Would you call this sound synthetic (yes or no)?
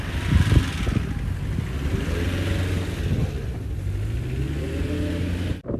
no